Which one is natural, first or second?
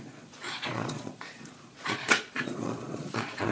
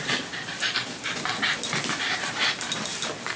second